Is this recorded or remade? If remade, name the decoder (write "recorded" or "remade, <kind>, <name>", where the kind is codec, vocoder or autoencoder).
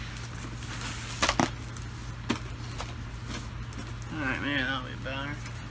recorded